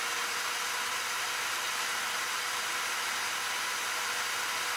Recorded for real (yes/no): yes